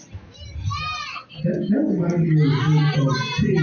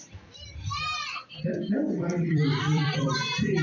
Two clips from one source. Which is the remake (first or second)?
second